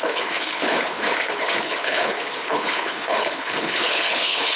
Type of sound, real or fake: fake